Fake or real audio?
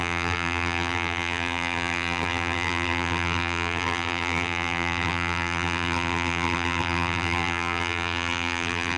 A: fake